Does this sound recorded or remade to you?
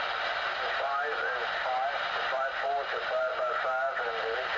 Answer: recorded